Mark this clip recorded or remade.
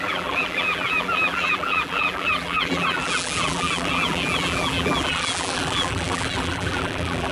remade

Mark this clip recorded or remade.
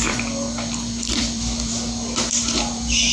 remade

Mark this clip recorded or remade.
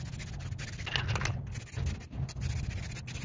recorded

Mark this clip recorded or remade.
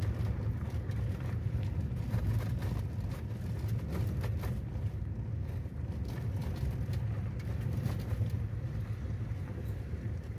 recorded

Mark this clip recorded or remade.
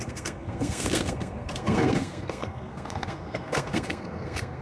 remade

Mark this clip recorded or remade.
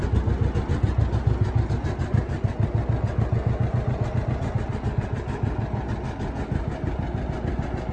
recorded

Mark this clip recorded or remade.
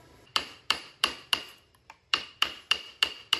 remade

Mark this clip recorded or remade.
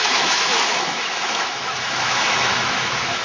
remade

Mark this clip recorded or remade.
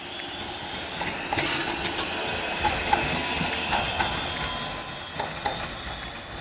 recorded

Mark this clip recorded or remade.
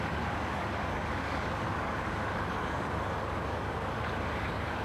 remade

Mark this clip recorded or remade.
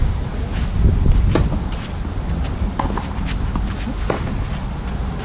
recorded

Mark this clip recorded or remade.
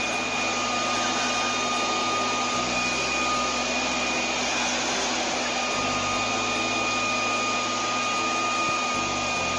recorded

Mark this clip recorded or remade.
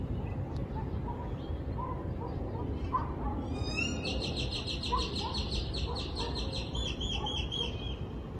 remade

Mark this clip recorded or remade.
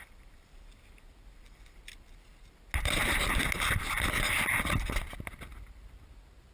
recorded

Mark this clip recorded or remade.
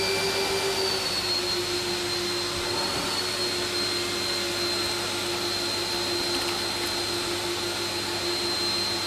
recorded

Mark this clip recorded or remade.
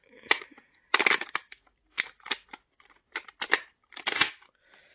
remade